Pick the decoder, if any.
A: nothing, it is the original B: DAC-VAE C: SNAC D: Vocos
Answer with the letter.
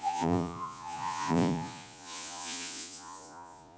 D